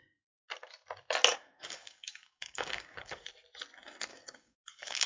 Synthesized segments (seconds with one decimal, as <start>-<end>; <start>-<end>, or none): 1.3-3.3; 4.1-5.1